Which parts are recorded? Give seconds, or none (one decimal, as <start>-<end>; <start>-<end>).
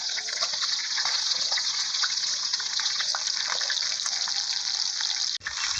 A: 3.1-5.8